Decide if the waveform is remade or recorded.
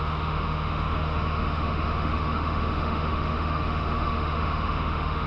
remade